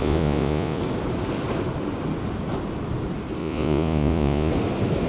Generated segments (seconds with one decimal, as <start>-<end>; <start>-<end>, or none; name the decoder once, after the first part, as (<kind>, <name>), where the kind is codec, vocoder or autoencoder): 0.0-0.8 (vocoder, Vocos); 3.4-4.5